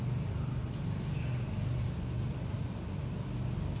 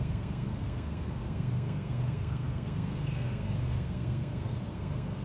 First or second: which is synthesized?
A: second